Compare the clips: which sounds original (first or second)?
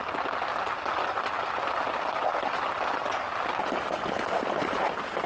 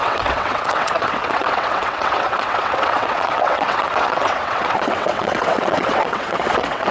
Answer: first